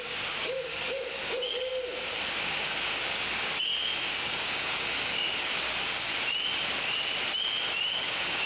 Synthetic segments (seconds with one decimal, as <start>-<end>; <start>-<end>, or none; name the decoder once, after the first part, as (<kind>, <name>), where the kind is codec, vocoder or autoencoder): 0.0-1.7 (codec, DAC); 2.3-3.7; 4.2-6.1; 7.9-8.5